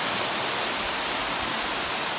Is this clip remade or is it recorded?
recorded